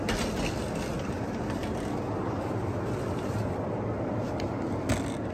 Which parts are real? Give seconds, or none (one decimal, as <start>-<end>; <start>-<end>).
0.0-5.3